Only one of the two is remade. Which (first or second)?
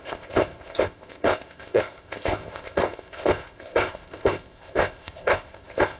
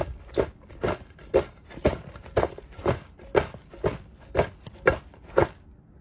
first